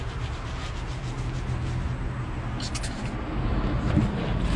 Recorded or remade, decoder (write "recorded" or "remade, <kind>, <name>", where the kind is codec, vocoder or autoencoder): recorded